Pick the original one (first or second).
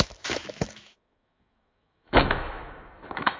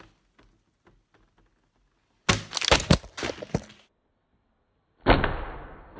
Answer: second